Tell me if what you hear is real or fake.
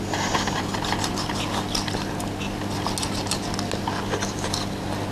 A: real